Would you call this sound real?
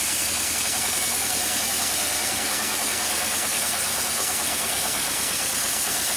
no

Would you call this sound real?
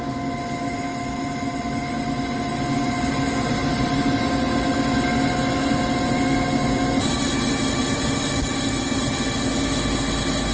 yes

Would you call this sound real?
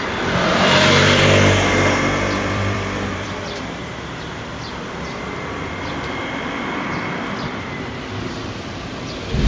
no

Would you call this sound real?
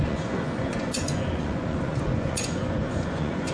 no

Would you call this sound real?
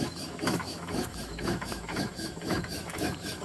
no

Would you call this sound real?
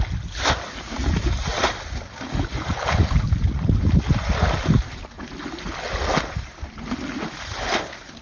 yes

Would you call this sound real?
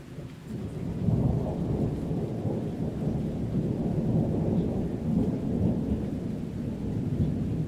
yes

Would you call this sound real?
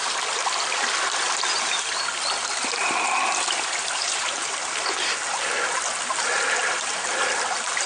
yes